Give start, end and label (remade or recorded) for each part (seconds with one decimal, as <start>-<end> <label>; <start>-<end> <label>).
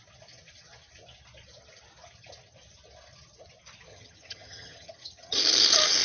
0.0-3.9 recorded; 3.9-5.4 remade; 5.4-6.0 recorded